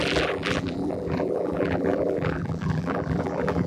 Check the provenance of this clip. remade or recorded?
remade